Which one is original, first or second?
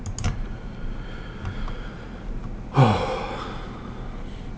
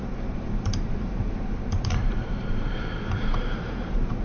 first